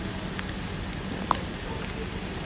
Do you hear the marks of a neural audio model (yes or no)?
no